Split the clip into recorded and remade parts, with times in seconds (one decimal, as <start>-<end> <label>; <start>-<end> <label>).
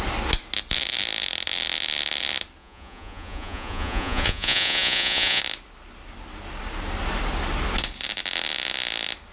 0.0-2.6 recorded; 2.6-5.4 remade; 5.4-9.3 recorded